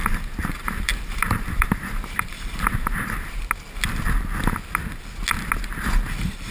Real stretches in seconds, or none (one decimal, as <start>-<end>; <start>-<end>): 3.4-6.5